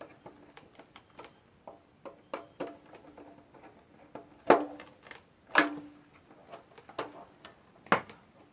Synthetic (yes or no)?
no